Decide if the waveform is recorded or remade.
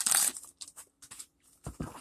recorded